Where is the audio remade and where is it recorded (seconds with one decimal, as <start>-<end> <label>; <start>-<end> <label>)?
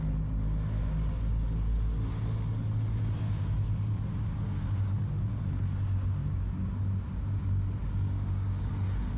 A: 0.0-7.8 recorded; 7.8-8.7 remade; 8.7-9.2 recorded